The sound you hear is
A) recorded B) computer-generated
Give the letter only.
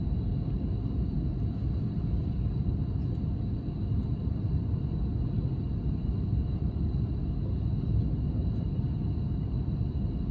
A